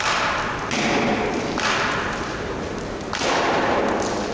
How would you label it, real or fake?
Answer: real